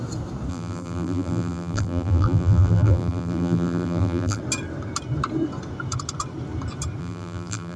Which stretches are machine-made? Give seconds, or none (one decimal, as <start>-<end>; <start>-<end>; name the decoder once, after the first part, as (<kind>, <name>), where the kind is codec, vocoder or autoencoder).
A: 0.5-4.4 (vocoder, BigVGAN v2); 7.0-7.8